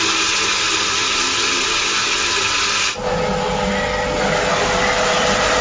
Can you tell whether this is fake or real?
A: real